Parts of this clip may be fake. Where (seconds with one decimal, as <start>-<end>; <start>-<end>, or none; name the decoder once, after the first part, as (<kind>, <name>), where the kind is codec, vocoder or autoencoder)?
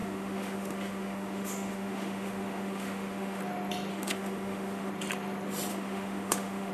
0.0-3.4 (autoencoder, DAC-VAE); 3.9-4.9; 5.7-6.7